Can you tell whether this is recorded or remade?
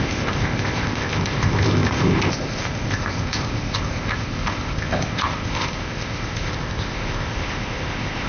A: remade